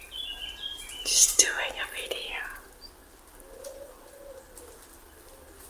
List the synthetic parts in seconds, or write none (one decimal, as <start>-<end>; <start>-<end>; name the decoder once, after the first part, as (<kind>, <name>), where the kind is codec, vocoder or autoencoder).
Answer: 0.7-1.8 (vocoder, BigVGAN v2)